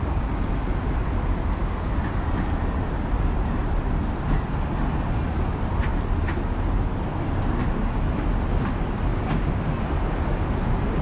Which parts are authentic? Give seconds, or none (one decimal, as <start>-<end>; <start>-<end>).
0.0-9.1; 9.6-11.0